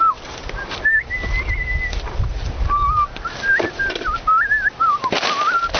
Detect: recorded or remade recorded